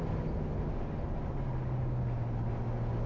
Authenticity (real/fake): real